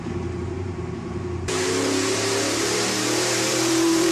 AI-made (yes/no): yes